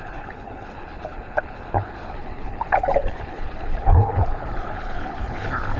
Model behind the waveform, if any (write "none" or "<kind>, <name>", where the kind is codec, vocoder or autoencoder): codec, HILCodec